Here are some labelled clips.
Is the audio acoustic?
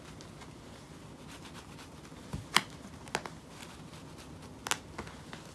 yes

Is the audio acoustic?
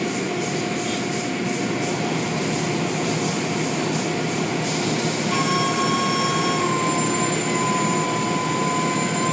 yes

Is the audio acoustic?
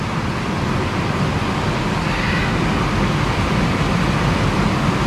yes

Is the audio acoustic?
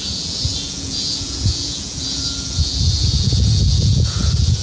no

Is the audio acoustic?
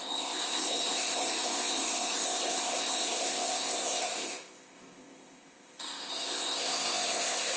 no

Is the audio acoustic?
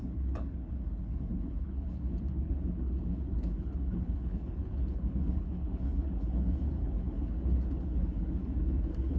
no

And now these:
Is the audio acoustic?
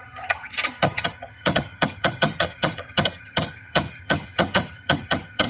no